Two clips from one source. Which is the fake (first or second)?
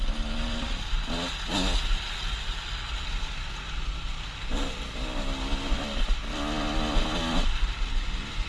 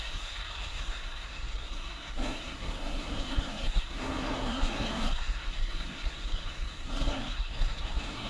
second